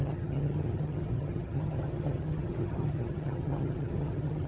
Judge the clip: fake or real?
fake